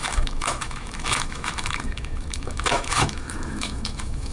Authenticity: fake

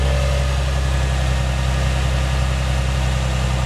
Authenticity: real